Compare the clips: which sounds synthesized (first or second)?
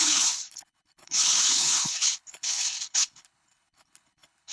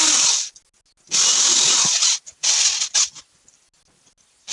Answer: first